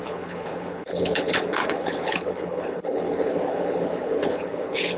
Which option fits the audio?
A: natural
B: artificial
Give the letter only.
B